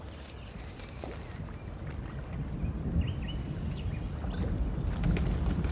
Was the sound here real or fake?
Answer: real